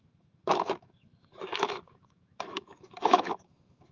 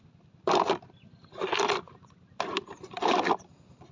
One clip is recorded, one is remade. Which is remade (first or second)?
first